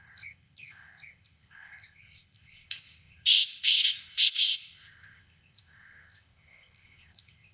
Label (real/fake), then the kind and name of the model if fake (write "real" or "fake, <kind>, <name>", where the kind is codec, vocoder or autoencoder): fake, codec, ZipCodec